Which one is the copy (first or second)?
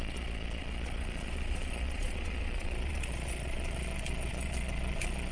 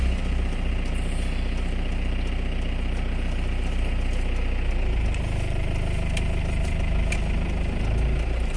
first